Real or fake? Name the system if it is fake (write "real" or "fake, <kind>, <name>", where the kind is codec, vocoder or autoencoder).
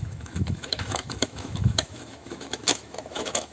fake, autoencoder, DAC-VAE